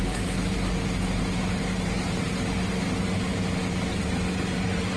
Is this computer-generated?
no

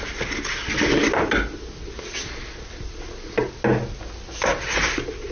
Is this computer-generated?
no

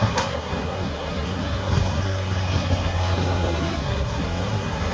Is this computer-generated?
yes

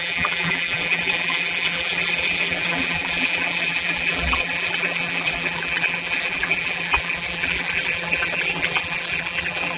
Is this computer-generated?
yes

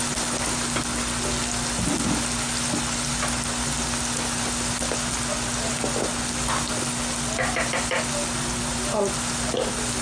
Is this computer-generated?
no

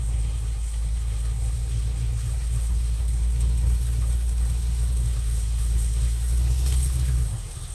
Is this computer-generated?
yes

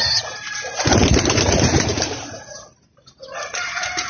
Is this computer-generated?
yes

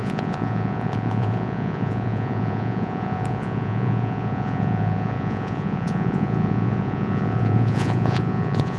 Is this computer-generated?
yes